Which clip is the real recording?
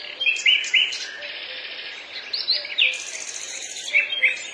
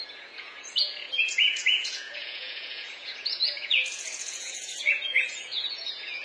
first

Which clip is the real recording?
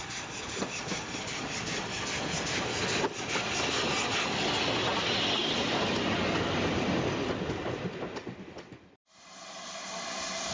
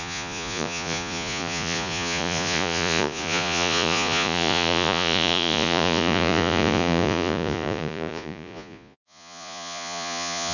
first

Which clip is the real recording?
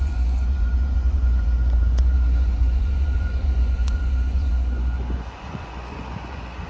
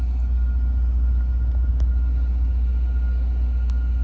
second